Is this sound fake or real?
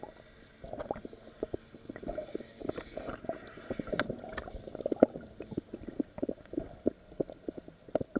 real